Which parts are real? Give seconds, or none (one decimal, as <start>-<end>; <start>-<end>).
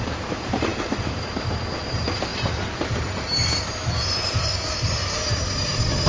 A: 0.0-6.1